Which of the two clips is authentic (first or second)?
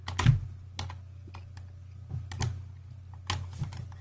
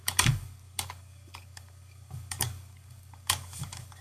first